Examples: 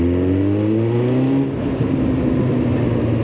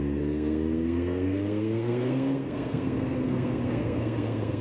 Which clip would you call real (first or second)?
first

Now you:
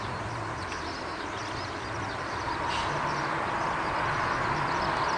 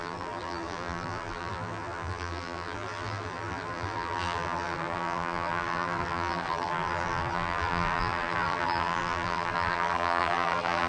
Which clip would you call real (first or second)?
first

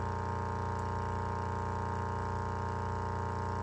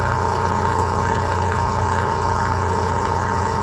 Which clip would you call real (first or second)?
first